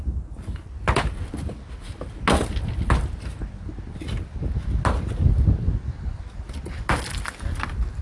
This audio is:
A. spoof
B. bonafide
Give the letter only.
B